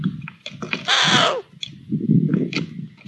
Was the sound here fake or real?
real